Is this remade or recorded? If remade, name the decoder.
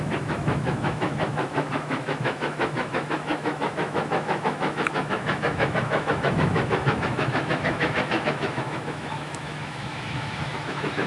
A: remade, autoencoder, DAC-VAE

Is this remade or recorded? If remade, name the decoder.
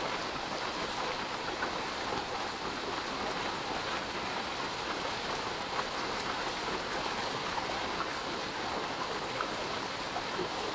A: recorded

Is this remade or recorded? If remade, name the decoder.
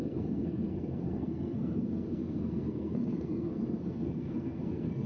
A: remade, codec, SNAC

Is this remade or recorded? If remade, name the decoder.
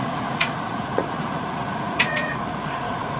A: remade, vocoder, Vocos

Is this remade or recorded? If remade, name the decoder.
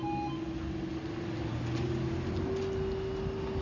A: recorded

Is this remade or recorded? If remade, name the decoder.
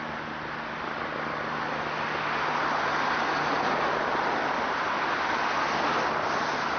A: recorded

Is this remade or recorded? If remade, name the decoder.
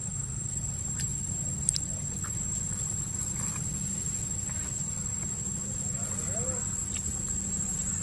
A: remade, vocoder, BigVGAN v2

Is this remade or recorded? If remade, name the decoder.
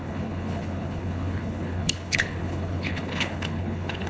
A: remade, codec, HILCodec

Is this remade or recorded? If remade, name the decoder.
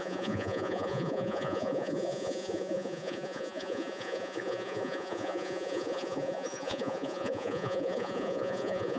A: remade, vocoder, Vocos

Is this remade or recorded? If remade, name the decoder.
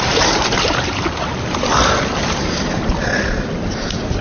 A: recorded